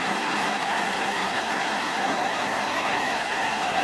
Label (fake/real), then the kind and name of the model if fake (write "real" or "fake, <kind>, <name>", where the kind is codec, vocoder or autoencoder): fake, codec, SNAC